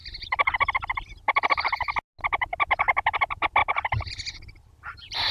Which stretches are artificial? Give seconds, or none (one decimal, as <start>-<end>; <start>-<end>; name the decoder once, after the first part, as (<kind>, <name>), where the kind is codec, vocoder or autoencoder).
none